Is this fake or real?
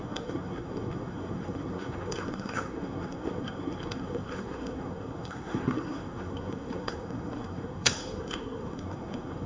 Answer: fake